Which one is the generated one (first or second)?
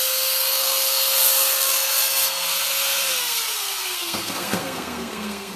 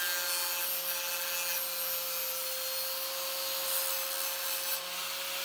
first